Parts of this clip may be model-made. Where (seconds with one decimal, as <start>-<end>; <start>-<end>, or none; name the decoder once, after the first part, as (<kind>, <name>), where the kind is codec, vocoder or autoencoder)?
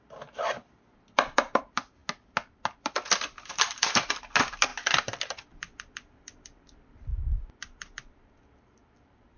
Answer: 0.0-2.0 (vocoder, BigVGAN v2); 2.7-4.7; 5.6-9.4